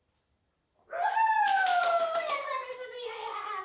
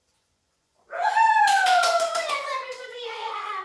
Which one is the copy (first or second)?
second